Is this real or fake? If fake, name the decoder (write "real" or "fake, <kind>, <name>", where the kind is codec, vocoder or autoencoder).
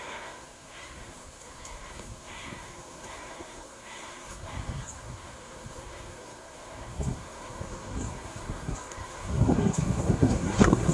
fake, codec, SNAC